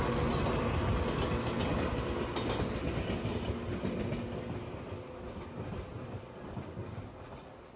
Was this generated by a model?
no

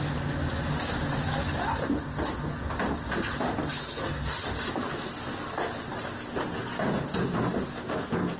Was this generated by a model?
no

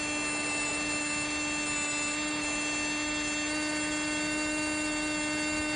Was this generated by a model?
no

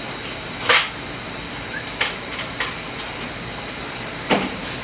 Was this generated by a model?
no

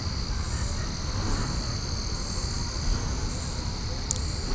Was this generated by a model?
no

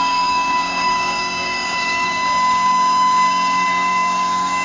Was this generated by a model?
yes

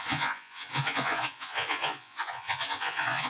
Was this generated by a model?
yes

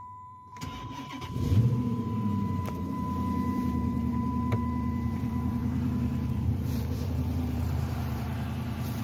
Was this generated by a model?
yes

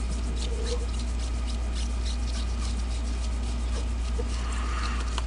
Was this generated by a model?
no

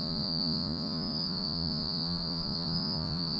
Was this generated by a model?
yes